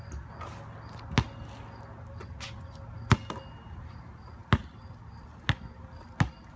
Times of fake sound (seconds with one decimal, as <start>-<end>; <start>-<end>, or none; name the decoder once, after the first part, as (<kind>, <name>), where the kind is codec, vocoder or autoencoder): none